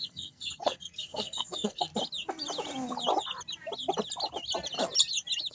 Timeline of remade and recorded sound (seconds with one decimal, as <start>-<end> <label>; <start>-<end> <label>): 0.0-1.9 remade; 1.9-5.5 recorded